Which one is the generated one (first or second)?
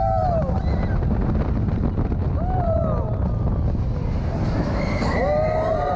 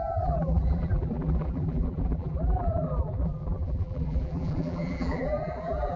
second